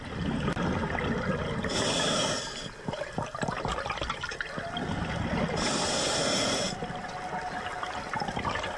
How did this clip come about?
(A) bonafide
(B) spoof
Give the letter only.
A